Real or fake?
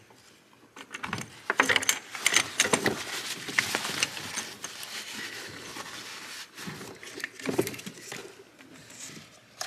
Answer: real